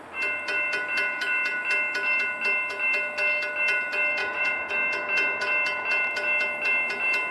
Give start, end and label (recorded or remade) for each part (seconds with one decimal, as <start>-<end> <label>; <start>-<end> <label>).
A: 0.0-4.2 recorded; 4.2-4.7 remade; 4.7-7.3 recorded